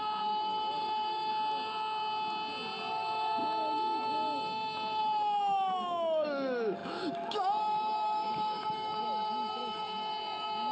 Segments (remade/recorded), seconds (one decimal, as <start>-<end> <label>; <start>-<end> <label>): 0.0-1.3 remade; 1.3-2.9 recorded; 2.9-10.7 remade